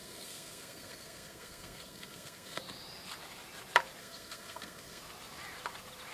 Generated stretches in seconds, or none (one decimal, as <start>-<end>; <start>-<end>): 0.0-2.6; 4.0-5.0